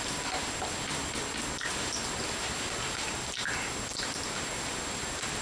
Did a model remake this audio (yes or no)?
no